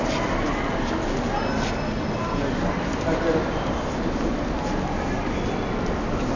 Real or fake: real